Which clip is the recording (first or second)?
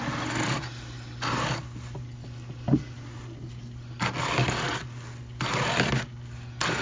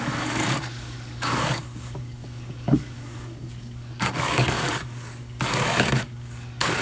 first